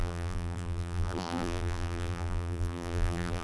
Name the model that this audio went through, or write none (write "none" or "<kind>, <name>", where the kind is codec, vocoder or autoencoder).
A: vocoder, BigVGAN v2